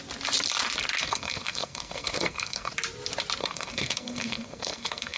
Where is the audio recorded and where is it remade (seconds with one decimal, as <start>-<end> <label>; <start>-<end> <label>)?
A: 0.0-1.0 recorded; 1.0-2.7 remade; 2.7-3.4 recorded; 3.4-5.2 remade